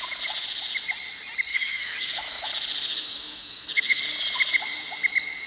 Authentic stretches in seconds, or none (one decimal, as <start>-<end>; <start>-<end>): 0.0-1.5; 2.5-2.9; 4.0-5.5